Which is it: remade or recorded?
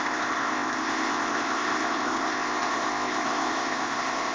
remade